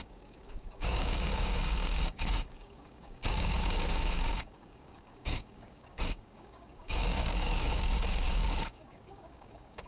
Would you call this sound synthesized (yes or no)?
yes